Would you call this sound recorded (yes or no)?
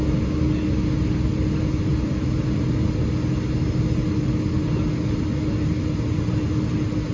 yes